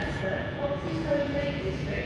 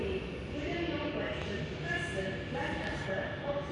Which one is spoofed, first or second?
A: first